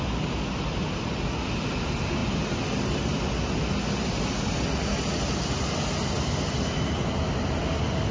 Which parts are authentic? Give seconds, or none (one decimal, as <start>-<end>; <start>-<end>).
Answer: 0.0-8.1

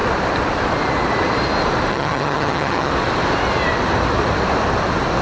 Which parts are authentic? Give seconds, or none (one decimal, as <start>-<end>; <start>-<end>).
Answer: 0.0-1.9; 2.9-5.2

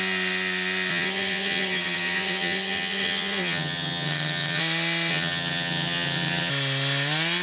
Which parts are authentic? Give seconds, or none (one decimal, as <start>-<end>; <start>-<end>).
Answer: 0.0-0.9; 4.6-5.1; 6.5-7.4

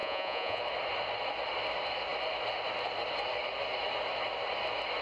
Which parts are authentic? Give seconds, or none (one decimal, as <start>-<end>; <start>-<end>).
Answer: 0.6-5.0

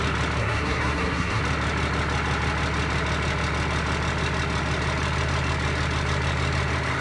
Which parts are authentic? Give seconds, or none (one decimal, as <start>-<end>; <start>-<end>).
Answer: 0.0-0.4; 1.4-7.0

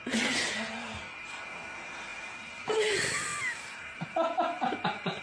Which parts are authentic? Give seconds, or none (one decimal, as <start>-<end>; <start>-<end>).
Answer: 0.0-5.2

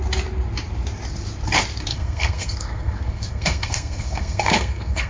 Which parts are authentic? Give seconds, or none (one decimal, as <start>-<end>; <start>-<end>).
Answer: 0.0-1.9